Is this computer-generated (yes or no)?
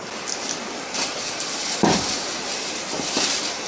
yes